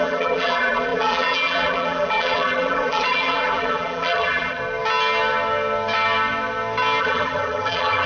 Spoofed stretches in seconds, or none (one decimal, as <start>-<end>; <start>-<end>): 0.0-4.6; 7.0-8.1